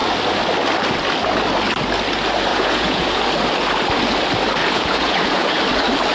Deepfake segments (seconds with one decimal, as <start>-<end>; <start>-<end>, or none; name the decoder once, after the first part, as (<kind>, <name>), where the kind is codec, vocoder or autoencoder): 2.5-3.2 (vocoder, Vocos); 4.6-5.6